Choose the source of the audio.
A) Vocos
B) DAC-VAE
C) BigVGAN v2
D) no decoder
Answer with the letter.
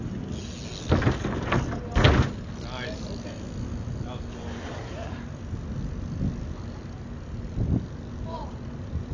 D